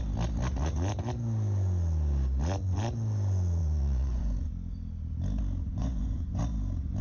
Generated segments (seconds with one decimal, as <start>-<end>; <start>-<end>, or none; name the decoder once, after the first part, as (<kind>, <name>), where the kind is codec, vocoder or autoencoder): 3.6-4.5 (vocoder, Vocos); 5.7-6.4